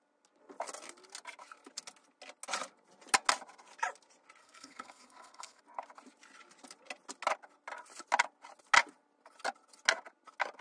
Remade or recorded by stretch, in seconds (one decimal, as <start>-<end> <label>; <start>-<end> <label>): 0.0-4.4 recorded; 4.4-5.6 remade; 5.6-10.6 recorded